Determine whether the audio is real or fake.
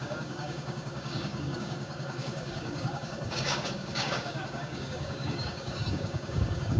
fake